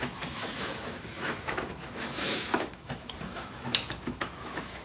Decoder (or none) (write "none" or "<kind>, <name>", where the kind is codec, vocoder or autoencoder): autoencoder, DAC-VAE